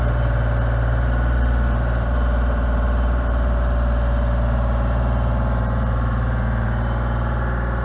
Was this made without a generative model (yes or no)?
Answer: no